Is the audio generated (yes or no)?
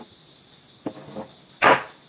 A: no